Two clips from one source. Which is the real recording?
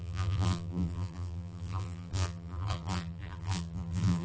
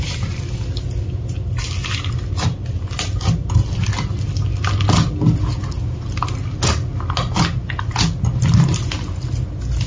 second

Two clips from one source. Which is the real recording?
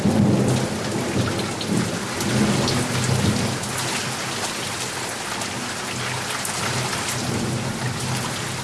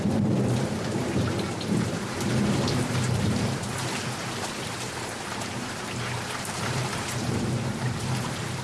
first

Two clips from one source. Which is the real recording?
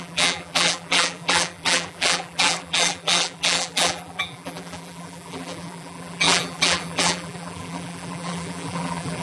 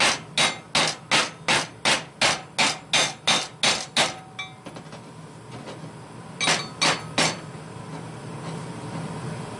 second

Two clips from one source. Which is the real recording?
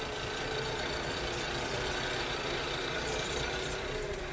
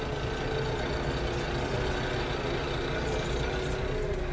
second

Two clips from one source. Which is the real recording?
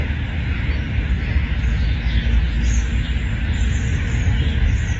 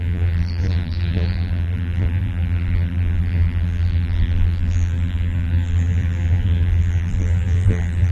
first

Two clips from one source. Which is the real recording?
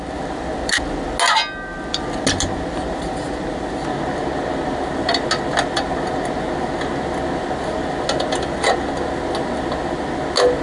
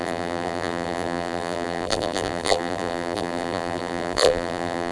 first